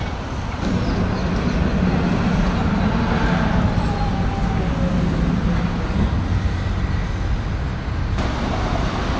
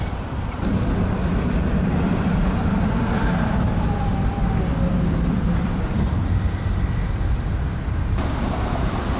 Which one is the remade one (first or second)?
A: second